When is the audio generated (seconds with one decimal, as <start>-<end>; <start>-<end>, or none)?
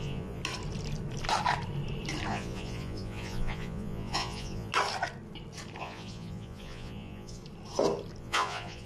0.0-0.4; 2.3-4.7; 5.8-7.4; 8.2-8.9